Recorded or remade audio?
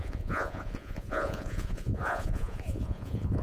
remade